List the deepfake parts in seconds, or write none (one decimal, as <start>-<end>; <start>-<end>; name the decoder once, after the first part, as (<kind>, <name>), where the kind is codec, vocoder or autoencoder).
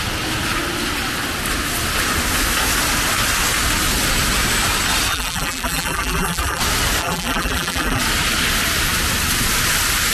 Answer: 5.1-6.6 (vocoder, BigVGAN v2); 7.0-8.0